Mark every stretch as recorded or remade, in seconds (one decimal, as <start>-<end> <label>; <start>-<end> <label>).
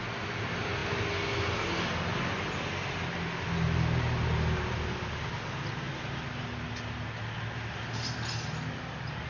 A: 0.0-9.3 recorded